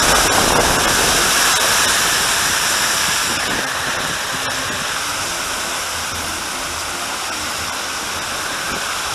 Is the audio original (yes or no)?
yes